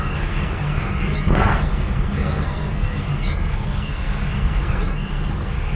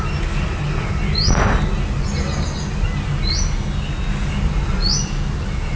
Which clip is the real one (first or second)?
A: second